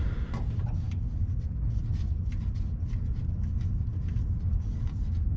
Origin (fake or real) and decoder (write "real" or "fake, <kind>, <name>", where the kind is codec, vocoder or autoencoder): real